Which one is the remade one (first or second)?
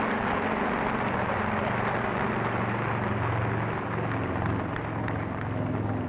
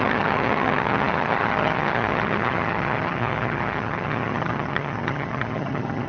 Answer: second